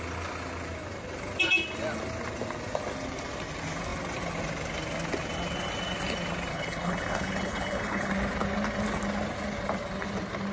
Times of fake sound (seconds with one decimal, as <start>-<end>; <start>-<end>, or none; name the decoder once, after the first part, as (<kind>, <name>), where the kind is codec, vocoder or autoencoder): 6.5-8.1 (codec, HILCodec)